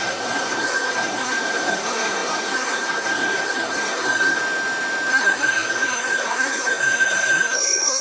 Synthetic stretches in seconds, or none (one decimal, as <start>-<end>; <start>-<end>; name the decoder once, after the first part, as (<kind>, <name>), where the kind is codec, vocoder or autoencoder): 0.0-4.4 (codec, SNAC); 5.1-8.0